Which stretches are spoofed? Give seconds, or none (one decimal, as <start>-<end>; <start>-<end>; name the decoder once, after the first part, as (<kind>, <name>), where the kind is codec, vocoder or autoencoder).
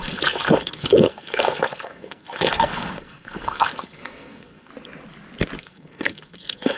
0.0-4.7 (codec, SNAC); 5.6-6.8